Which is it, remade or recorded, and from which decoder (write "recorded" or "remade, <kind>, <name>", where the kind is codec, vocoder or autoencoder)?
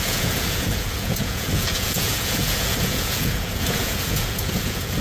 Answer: remade, vocoder, Vocos